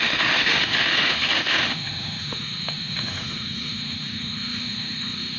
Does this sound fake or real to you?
fake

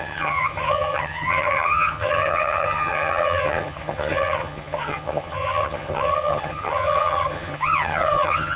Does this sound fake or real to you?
fake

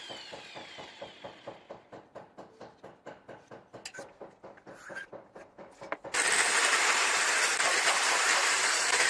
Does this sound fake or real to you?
real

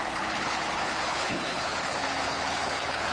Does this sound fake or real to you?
fake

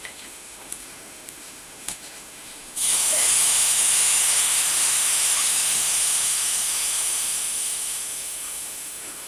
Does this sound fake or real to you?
fake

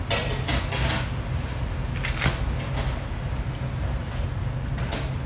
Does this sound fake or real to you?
real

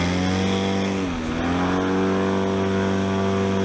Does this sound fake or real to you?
real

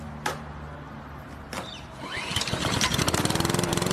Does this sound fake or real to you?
real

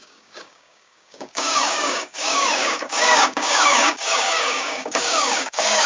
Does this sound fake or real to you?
fake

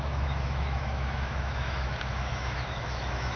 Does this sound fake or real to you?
fake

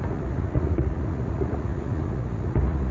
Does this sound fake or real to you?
fake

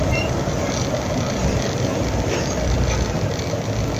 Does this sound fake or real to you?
real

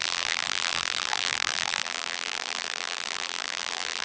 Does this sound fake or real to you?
fake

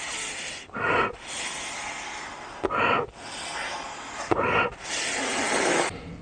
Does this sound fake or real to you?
real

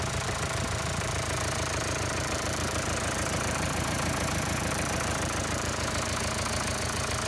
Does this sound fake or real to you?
fake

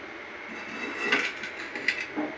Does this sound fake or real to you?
real